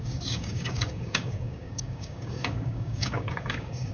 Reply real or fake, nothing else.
fake